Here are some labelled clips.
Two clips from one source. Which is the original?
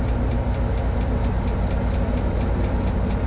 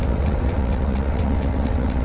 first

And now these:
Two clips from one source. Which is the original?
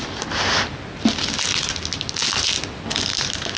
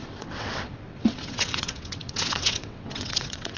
first